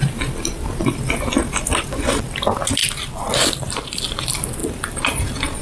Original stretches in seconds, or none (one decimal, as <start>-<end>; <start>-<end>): 0.0-2.8; 4.0-4.6